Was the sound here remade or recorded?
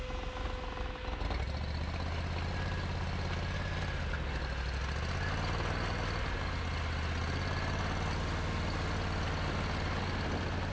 recorded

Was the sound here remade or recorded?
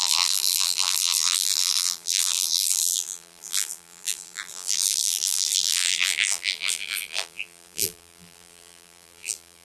remade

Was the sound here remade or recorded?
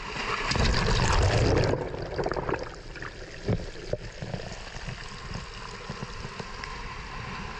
recorded